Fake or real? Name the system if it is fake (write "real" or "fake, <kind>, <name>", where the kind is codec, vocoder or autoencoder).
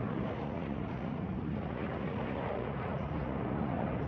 fake, vocoder, Vocos